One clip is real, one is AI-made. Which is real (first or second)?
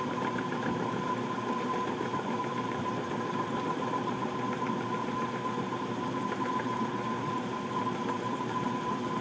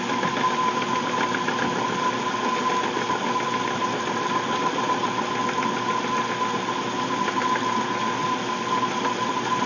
second